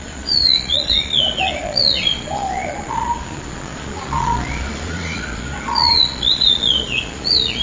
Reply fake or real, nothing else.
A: fake